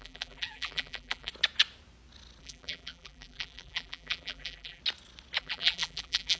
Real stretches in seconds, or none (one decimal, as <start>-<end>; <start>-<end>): 1.3-2.4; 4.8-5.4